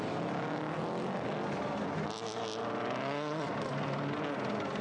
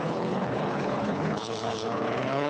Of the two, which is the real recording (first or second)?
first